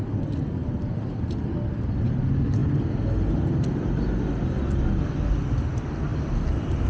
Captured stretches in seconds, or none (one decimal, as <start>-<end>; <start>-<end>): 0.0-6.9

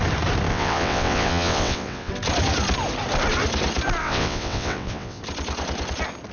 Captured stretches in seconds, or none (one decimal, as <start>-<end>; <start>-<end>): 0.0-0.5; 2.1-4.0; 5.2-6.3

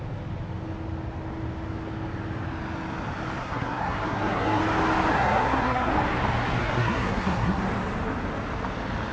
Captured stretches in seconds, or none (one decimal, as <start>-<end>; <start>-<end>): 0.0-3.4; 4.6-5.1; 5.9-6.6; 7.6-9.1

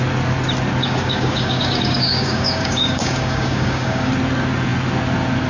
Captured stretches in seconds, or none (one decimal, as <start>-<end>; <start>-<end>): 0.0-0.8; 4.1-5.5

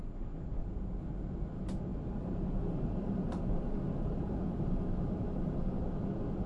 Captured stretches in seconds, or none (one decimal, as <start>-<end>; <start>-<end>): 0.0-1.9; 5.8-6.5

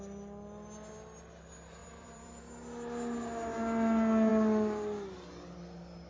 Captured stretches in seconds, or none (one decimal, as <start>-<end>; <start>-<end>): 0.0-1.8; 2.4-6.1

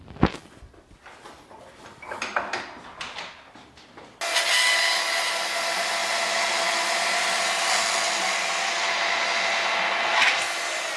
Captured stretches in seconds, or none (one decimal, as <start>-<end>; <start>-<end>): 0.0-11.0

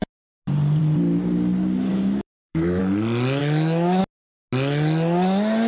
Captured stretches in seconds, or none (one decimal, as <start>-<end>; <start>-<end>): 0.0-1.9; 2.8-3.4; 4.0-5.7